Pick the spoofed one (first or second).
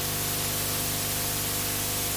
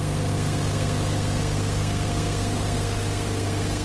second